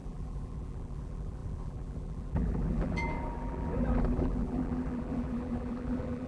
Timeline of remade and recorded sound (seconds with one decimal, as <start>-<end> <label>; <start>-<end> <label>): 0.0-6.3 remade